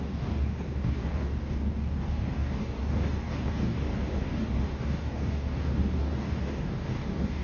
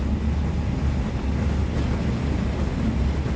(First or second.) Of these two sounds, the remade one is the first